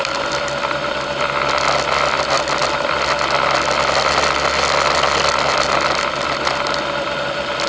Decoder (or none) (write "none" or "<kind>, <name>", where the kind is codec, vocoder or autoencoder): none